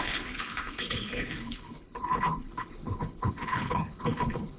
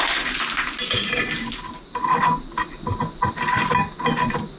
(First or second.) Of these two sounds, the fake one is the first